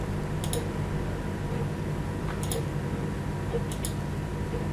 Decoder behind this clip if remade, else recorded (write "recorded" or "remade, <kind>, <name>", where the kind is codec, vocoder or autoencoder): recorded